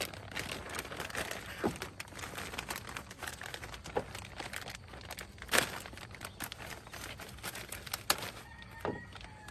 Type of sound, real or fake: real